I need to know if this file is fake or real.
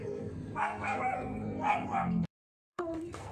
fake